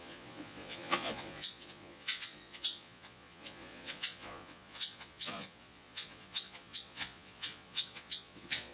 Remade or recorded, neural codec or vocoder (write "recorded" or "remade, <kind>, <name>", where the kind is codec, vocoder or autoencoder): remade, vocoder, Vocos